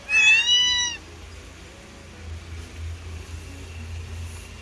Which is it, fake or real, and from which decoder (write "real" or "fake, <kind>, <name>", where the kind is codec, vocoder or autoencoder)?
real